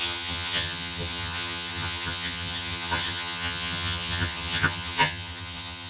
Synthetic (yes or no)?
yes